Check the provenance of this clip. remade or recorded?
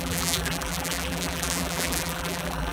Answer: remade